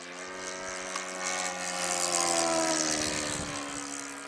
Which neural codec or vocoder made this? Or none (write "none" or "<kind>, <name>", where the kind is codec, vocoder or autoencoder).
none